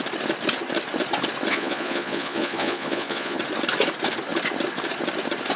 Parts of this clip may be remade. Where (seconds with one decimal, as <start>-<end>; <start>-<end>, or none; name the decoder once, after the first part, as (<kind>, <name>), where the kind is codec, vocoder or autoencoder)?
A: 1.5-3.4 (vocoder, Vocos)